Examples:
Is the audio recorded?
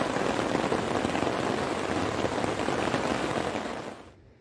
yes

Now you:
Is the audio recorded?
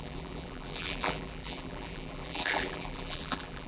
no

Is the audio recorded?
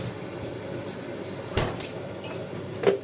yes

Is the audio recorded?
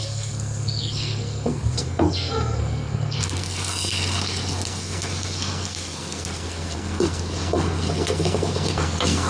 no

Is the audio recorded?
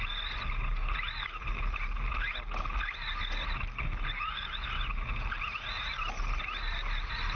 yes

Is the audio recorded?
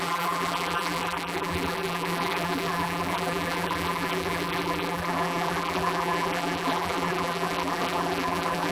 no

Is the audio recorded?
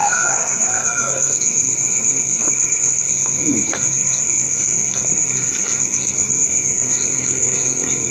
no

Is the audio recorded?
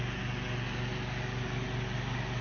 yes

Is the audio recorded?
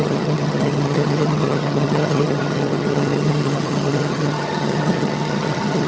no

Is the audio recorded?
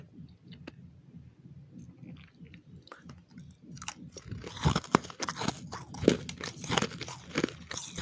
yes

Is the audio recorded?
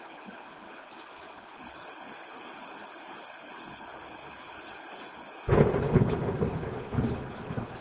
no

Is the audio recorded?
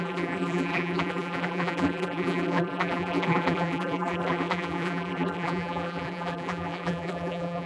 no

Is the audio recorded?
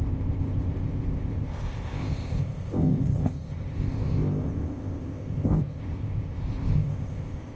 no